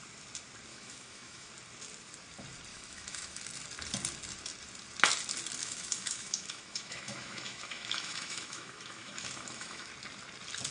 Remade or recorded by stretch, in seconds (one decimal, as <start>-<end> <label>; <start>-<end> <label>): 0.0-0.7 recorded; 0.7-1.5 remade; 1.5-2.7 recorded; 2.7-3.4 remade; 3.4-5.6 recorded; 5.6-9.9 remade; 9.9-10.7 recorded

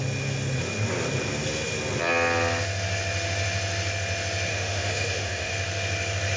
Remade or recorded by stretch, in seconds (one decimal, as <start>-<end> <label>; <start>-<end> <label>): 0.0-4.5 recorded; 4.5-5.5 remade; 5.5-6.4 recorded

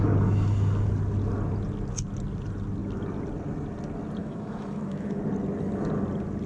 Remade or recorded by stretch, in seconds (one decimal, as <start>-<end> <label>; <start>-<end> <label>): 0.0-4.2 recorded; 4.2-5.2 remade; 5.2-6.5 recorded

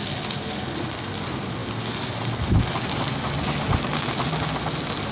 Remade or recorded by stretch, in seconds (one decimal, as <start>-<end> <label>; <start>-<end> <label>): 0.0-5.1 recorded

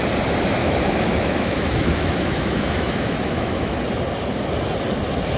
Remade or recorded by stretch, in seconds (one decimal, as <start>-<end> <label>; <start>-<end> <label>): 0.0-0.6 recorded; 0.6-3.8 remade; 3.8-5.4 recorded

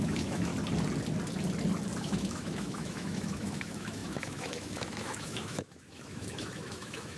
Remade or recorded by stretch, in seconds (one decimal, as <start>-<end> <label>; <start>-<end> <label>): 0.0-0.5 remade; 0.5-2.0 recorded; 2.0-7.2 remade